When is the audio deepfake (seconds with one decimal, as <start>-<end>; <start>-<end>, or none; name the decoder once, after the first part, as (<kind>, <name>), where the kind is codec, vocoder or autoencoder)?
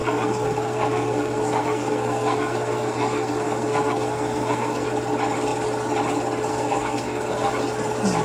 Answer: 0.0-4.9 (codec, SNAC); 6.5-7.5